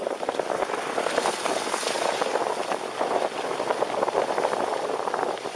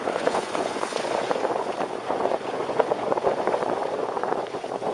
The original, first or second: first